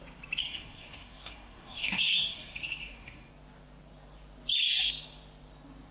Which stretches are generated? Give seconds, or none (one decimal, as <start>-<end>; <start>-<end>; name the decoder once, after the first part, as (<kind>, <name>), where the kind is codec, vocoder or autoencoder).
0.4-3.3 (codec, SNAC)